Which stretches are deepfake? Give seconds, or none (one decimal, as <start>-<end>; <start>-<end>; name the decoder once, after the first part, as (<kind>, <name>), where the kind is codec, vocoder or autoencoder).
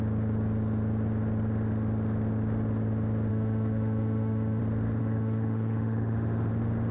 3.3-4.6 (autoencoder, DAC-VAE); 5.0-6.5